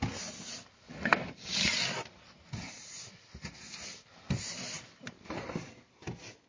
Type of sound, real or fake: real